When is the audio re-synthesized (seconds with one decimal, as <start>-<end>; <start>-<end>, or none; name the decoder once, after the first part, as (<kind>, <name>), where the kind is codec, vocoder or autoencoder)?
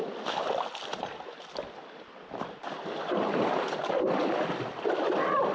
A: none